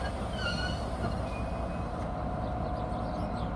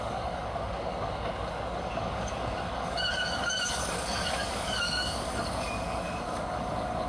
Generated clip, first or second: second